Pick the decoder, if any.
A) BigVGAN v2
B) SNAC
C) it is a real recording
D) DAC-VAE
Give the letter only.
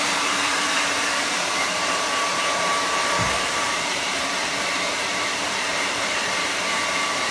A